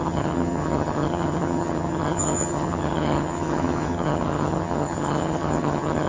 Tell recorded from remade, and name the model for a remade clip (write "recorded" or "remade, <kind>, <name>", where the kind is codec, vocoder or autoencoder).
remade, vocoder, HiFi-GAN